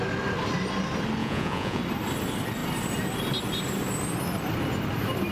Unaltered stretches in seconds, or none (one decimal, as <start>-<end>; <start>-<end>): 0.0-1.2; 1.8-5.3